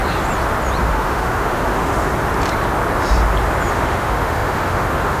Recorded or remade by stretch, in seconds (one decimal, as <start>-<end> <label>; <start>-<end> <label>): 0.0-0.8 recorded; 0.8-2.1 remade; 2.1-3.7 recorded; 3.7-5.2 remade